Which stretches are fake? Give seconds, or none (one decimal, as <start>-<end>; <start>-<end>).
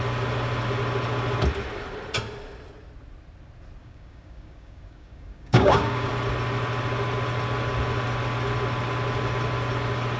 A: 3.8-6.1